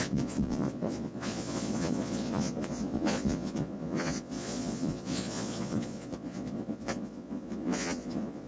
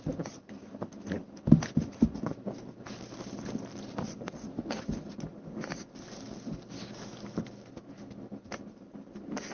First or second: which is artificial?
first